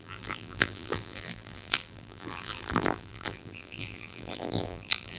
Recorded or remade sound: remade